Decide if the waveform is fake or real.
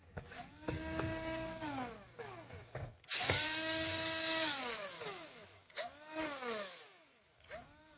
fake